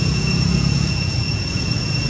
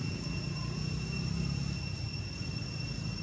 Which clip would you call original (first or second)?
second